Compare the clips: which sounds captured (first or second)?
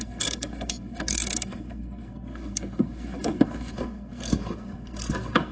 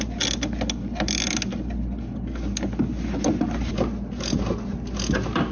second